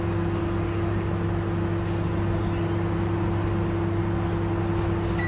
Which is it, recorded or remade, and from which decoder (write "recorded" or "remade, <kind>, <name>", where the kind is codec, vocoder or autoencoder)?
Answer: recorded